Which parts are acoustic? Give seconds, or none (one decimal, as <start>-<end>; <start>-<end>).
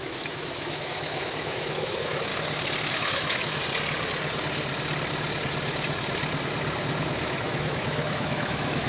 2.3-2.9; 3.6-7.0